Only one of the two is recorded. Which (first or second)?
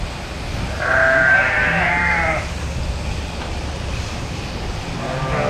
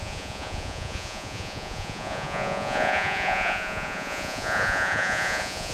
first